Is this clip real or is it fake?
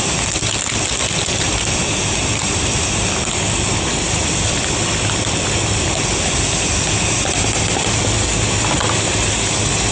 real